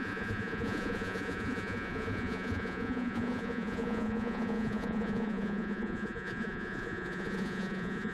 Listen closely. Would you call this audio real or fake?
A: fake